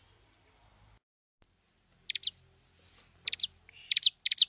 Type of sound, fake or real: real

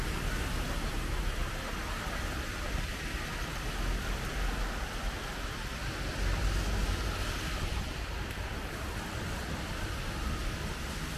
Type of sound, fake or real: real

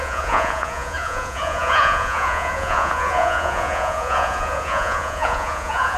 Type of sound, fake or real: fake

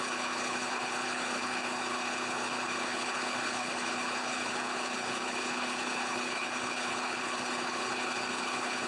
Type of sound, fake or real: fake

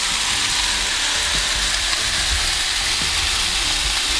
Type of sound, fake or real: real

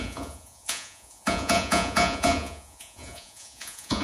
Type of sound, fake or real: fake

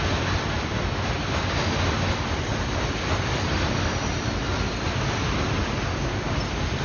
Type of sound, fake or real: real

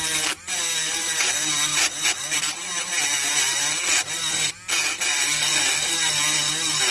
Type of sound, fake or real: real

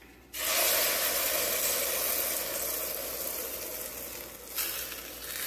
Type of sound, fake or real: real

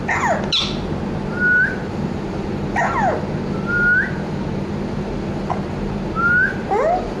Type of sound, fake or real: real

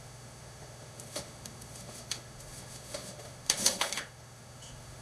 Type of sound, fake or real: fake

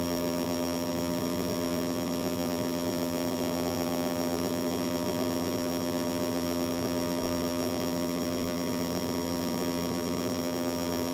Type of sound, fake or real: fake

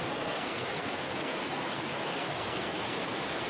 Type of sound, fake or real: fake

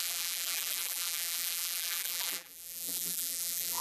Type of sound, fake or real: fake